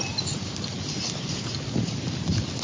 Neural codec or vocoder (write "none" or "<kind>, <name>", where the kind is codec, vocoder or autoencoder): none